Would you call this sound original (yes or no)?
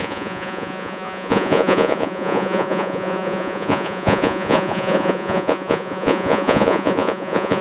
no